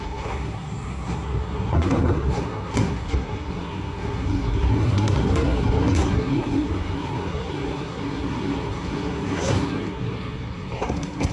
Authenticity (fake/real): fake